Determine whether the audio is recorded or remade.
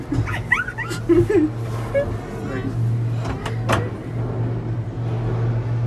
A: recorded